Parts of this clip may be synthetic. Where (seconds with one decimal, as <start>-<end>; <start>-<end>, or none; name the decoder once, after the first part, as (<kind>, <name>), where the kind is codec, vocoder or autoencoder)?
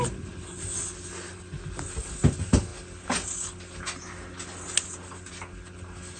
none